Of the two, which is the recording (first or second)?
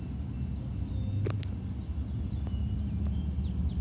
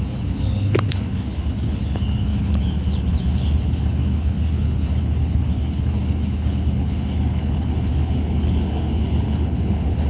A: first